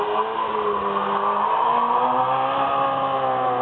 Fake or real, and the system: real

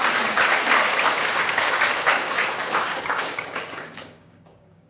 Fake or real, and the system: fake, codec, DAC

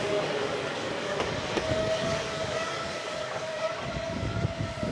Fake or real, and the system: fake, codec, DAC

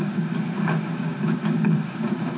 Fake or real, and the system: fake, codec, DAC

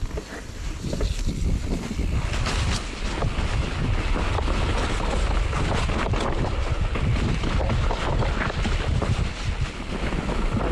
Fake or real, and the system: real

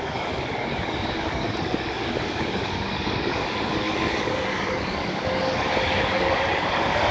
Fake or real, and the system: fake, codec, DAC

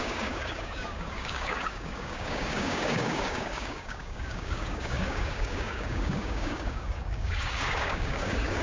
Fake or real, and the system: fake, codec, DAC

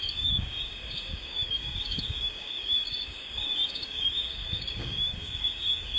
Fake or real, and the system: fake, codec, DAC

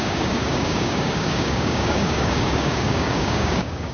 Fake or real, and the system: fake, codec, DAC